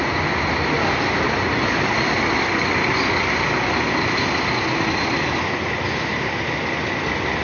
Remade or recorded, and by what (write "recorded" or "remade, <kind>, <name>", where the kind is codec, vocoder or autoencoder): recorded